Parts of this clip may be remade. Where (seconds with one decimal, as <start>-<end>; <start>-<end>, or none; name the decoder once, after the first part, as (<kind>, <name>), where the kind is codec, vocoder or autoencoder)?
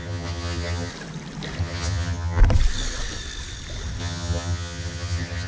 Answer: 0.0-0.9 (vocoder, HiFi-GAN); 1.6-2.4; 4.0-5.5